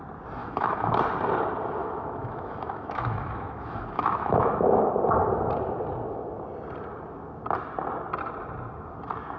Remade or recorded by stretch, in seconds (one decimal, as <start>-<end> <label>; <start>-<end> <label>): 0.0-0.4 recorded; 0.4-1.0 remade; 1.0-1.8 recorded; 1.8-4.8 remade; 4.8-9.4 recorded